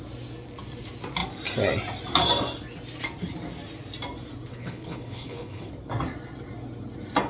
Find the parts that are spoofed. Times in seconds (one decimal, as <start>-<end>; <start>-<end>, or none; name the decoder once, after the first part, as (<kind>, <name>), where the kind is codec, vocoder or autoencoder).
4.5-5.7 (codec, HILCodec)